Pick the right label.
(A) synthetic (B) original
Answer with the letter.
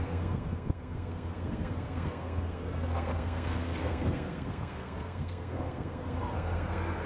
A